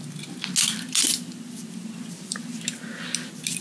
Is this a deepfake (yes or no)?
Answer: no